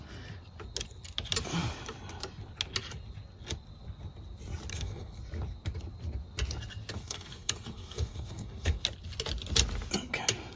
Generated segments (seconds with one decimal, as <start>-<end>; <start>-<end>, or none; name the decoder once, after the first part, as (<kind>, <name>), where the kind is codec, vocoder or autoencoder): 4.7-5.2 (codec, SNAC); 6.9-8.8